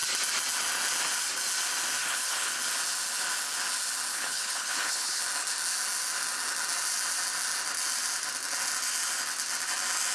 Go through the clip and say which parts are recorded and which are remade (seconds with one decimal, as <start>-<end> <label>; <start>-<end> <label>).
0.0-2.0 recorded; 2.0-2.5 remade; 2.5-4.1 recorded; 4.1-5.2 remade; 5.2-10.1 recorded

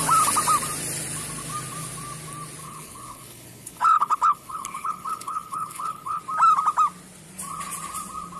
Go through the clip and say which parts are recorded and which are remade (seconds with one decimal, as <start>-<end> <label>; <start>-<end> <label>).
0.0-2.6 recorded; 2.6-6.2 remade; 6.2-8.4 recorded

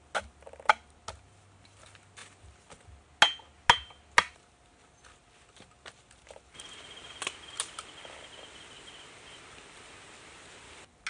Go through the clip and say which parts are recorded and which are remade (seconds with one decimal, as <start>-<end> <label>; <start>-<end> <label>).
0.0-11.1 recorded